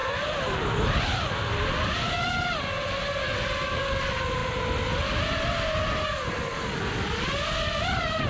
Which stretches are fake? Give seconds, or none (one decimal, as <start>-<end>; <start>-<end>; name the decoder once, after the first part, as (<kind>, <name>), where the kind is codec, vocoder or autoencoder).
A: none